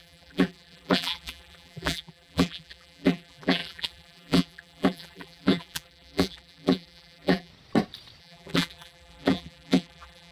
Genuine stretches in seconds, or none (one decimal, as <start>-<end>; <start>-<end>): 7.5-8.2

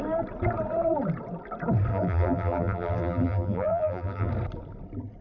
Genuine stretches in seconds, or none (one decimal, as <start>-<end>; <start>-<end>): 0.0-1.9; 4.3-5.2